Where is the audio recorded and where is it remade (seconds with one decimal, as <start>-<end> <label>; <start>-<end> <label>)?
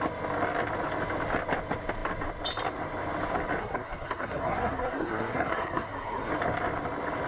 0.0-3.6 recorded; 3.6-6.3 remade; 6.3-7.3 recorded